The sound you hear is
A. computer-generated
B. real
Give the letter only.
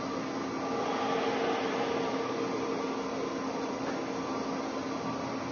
B